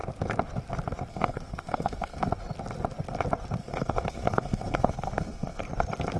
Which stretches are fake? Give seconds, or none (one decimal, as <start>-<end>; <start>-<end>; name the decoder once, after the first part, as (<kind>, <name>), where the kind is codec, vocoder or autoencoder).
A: 1.1-2.3 (codec, SNAC); 3.6-5.6